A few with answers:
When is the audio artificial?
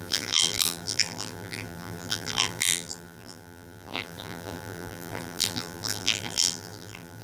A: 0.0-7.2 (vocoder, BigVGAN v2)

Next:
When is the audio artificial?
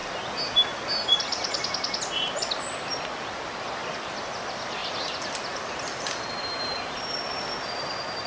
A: none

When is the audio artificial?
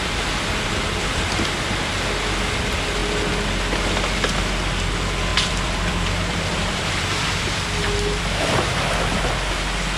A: 1.0-1.9 (vocoder, BigVGAN v2); 5.3-8.5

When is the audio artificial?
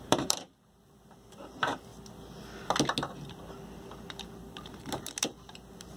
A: 0.0-1.9 (vocoder, BigVGAN v2); 4.5-6.0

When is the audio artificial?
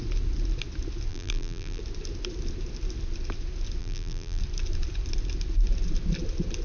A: 1.1-1.8 (vocoder, BigVGAN v2); 3.8-4.4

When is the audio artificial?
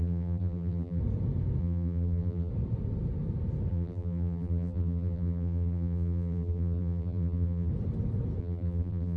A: 0.0-1.0 (vocoder, BigVGAN v2); 1.6-2.5; 3.7-7.7; 8.4-9.2